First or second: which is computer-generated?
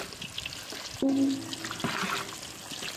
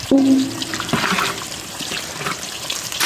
second